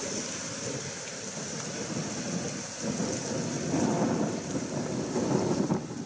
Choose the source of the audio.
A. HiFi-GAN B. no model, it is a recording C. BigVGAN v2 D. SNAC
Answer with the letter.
B